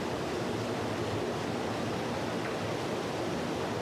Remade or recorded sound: recorded